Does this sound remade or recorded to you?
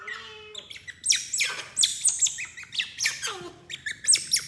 recorded